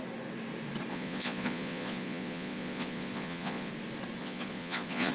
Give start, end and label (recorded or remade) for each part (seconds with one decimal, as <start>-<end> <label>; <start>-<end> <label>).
0.0-0.9 recorded; 0.9-3.7 remade; 3.7-4.2 recorded; 4.2-5.1 remade

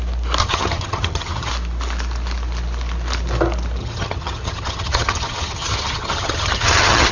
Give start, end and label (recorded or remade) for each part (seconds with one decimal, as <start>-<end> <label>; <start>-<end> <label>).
0.0-0.4 recorded; 0.4-1.5 remade; 1.5-3.8 recorded; 3.8-7.1 remade

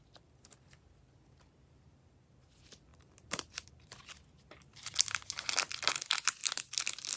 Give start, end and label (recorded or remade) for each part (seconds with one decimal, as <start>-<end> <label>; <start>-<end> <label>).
0.0-2.9 recorded; 2.9-3.7 remade; 3.7-7.2 recorded